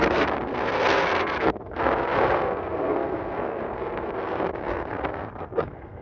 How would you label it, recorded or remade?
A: remade